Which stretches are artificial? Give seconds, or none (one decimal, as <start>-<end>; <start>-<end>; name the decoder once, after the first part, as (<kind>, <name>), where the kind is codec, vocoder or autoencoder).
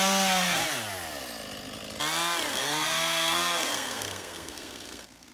0.0-0.6 (codec, SNAC); 2.5-5.3